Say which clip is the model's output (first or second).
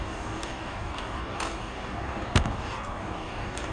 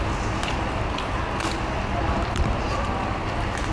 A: first